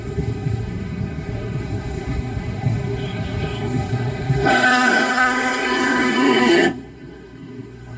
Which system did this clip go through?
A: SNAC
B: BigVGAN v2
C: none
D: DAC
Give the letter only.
A